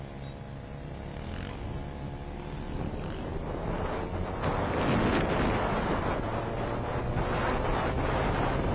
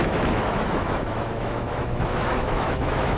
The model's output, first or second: second